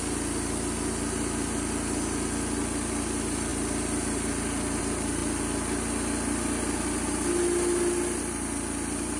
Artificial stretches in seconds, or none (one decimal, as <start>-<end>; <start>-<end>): none